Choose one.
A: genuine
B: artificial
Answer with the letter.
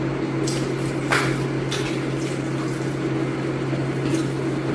A